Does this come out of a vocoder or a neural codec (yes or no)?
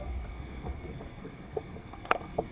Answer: yes